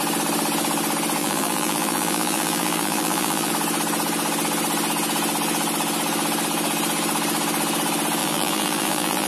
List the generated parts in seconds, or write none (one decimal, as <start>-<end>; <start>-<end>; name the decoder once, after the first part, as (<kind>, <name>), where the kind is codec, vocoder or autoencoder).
1.2-3.5 (vocoder, BigVGAN v2); 8.2-9.3

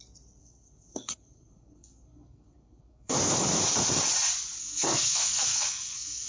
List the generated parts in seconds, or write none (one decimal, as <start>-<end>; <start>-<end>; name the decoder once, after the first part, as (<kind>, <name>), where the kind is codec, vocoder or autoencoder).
0.4-3.3 (codec, SNAC); 4.6-6.3

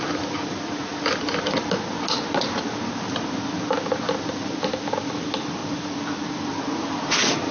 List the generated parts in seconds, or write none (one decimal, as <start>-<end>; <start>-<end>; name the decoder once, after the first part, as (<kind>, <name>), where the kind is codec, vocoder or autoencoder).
none

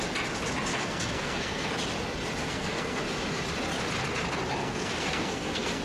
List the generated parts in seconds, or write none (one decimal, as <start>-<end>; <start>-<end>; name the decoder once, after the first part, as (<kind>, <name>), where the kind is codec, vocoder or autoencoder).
0.7-1.7 (codec, SNAC); 2.4-3.0; 4.6-5.8